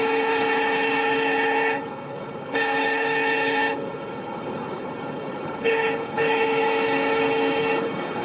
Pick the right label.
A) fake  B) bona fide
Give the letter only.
A